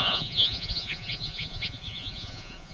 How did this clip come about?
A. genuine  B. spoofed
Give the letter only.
B